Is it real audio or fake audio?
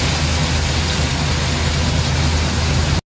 real